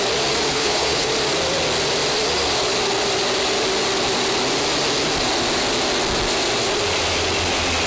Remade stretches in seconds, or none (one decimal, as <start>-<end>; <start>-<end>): 0.5-1.1

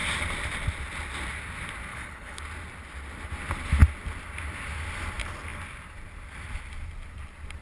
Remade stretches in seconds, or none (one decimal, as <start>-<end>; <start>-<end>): 1.9-2.4

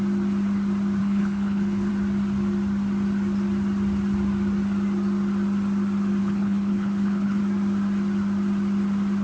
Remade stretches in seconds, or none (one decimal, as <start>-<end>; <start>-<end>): 1.0-1.9; 6.2-7.4

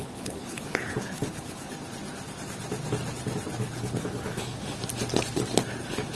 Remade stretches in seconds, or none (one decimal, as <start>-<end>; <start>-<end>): 0.0-1.7; 3.6-4.6

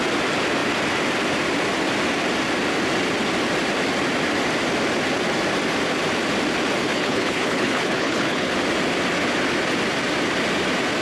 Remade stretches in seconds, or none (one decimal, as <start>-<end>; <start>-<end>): 6.9-8.6

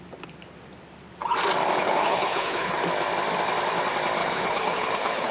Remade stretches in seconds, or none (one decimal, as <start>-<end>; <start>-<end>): 1.8-2.8; 4.2-5.3

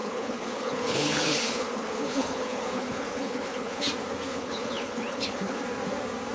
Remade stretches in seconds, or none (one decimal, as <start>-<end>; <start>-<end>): 0.0-3.8; 4.3-5.6